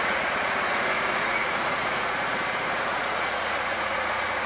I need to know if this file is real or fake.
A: fake